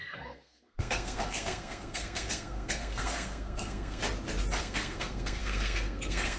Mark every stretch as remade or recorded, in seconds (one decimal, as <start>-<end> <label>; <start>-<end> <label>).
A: 0.0-4.0 remade; 4.0-4.6 recorded; 4.6-6.4 remade